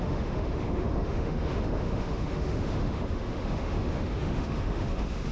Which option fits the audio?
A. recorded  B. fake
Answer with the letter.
B